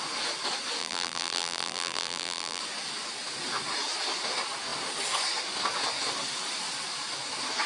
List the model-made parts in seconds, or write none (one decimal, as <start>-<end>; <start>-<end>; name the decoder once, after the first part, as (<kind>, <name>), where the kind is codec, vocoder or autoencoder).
0.8-2.6 (vocoder, BigVGAN v2)